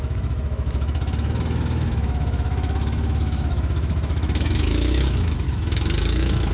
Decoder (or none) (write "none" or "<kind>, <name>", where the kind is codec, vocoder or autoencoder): autoencoder, DAC-VAE